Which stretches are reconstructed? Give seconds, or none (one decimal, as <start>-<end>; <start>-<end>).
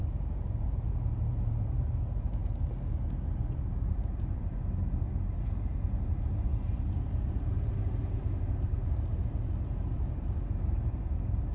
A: 0.0-2.4; 3.3-11.5